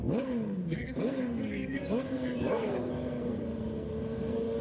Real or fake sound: fake